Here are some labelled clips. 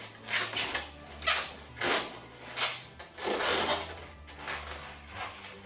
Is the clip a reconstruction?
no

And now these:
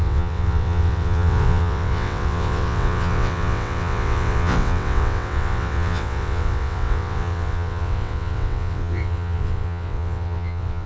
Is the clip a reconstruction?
yes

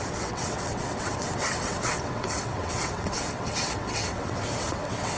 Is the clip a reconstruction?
yes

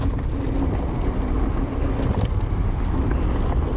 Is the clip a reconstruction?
no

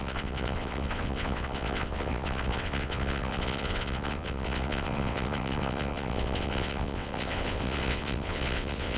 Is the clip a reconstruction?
yes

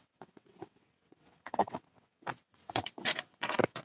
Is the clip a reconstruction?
yes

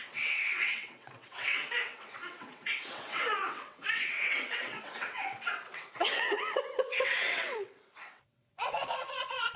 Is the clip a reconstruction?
yes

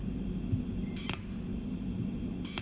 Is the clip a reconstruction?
no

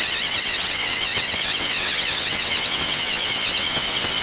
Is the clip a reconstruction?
yes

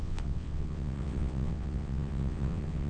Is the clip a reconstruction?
yes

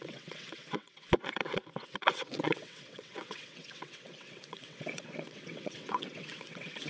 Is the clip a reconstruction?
yes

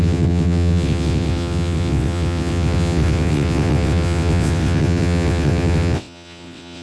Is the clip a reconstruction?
yes